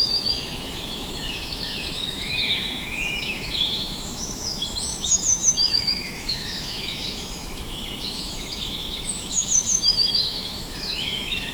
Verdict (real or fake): fake